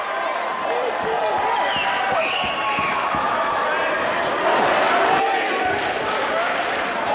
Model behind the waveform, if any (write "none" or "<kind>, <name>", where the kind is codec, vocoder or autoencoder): none